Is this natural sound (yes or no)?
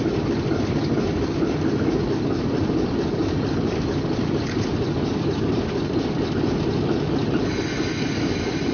yes